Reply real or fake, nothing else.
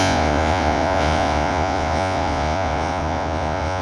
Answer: fake